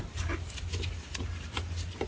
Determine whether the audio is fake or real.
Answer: real